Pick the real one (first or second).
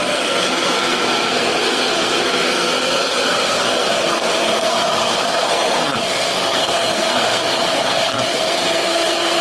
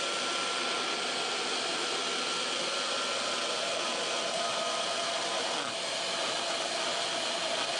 second